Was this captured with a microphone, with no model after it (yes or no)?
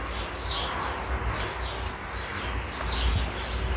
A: yes